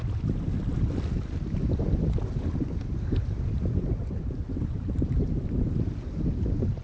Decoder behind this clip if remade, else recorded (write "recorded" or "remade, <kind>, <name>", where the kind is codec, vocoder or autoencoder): recorded